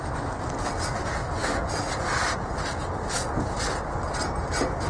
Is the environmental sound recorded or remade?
recorded